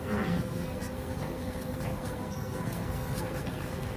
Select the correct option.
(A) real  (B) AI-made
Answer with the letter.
B